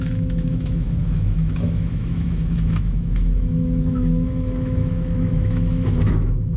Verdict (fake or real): fake